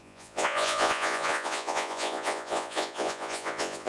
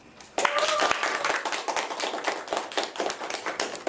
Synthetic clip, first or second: first